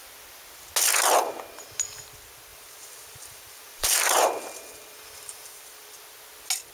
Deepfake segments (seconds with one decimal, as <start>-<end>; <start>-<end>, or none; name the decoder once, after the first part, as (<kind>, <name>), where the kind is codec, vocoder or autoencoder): 2.5-6.0 (vocoder, BigVGAN v2)